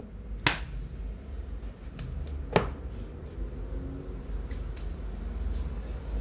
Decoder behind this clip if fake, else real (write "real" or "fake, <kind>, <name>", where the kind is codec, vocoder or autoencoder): real